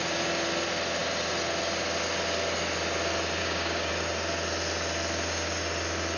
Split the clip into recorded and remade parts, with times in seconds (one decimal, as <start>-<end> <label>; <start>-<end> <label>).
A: 0.0-3.4 recorded; 3.4-3.9 remade; 3.9-6.2 recorded